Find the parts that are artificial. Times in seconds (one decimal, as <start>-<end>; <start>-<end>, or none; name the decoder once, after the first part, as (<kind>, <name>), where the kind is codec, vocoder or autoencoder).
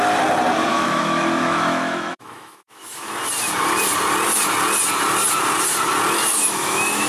0.7-3.1 (autoencoder, DAC-VAE); 6.3-7.1